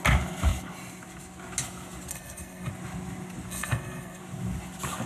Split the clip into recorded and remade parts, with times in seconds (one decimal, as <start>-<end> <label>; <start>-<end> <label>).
0.0-2.1 recorded; 2.1-2.7 remade; 2.7-3.5 recorded; 3.5-4.2 remade; 4.2-5.1 recorded